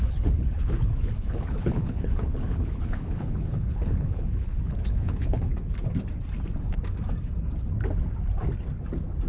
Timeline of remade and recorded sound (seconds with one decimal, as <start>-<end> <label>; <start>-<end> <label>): 0.0-5.5 remade; 5.5-9.3 recorded